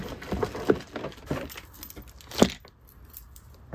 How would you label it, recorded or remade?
recorded